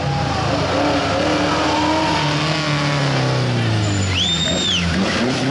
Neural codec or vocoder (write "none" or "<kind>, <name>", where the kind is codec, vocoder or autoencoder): none